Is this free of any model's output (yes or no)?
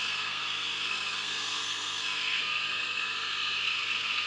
no